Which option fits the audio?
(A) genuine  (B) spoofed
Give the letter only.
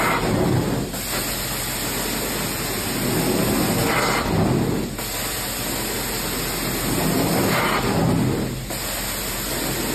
A